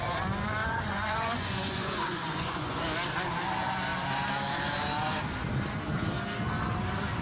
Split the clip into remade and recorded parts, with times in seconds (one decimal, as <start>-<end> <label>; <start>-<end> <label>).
0.0-0.6 recorded; 0.6-2.8 remade; 2.8-7.2 recorded